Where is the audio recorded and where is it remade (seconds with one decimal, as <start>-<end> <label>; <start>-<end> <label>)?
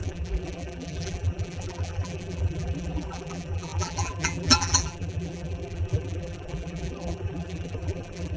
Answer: 0.0-8.4 remade